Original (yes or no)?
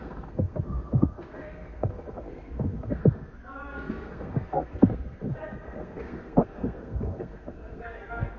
no